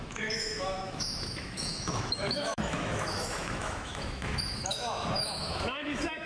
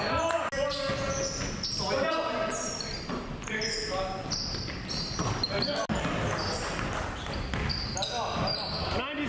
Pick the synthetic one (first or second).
first